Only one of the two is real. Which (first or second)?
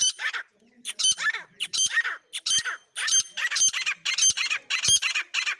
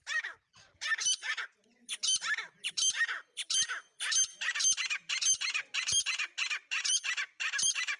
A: first